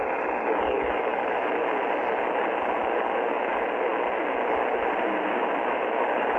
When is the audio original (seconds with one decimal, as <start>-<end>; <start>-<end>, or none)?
0.0-6.4

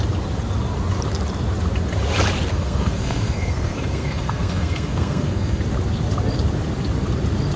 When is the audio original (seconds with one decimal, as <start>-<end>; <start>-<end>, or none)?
0.0-2.5; 5.6-7.6